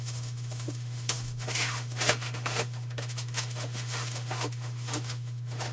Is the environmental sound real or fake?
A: fake